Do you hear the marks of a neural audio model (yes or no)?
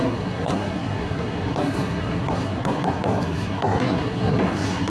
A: yes